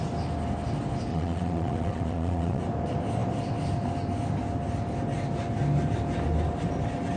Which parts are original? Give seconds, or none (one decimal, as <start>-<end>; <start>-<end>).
0.0-1.1; 2.6-7.2